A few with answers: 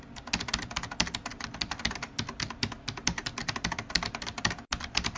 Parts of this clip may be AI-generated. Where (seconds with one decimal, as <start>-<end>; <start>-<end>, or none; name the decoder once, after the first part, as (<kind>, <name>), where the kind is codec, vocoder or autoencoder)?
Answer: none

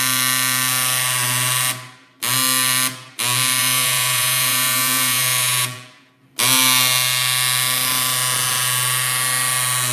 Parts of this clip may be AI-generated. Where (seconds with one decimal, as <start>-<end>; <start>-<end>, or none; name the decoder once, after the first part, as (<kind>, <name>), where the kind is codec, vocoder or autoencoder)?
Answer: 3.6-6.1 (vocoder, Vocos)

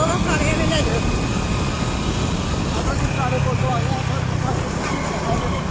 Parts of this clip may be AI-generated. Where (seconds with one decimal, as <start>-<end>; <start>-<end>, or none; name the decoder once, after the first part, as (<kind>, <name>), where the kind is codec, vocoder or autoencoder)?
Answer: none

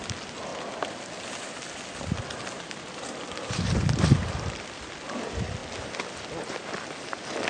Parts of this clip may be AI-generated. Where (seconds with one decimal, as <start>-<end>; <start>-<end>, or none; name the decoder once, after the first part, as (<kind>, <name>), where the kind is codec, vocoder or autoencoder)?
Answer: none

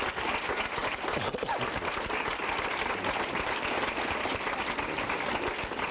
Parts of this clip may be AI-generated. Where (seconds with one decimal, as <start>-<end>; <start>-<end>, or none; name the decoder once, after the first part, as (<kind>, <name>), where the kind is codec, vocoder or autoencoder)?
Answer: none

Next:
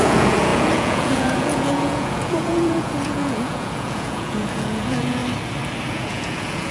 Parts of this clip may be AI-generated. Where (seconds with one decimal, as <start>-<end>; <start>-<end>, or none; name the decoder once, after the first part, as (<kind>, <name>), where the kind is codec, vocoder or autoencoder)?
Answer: 0.0-5.2 (vocoder, Vocos); 5.9-6.7

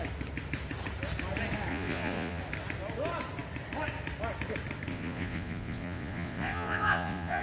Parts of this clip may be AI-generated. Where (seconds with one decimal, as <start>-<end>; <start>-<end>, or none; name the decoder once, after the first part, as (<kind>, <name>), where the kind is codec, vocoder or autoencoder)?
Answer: 1.7-2.4 (vocoder, Vocos); 4.9-7.4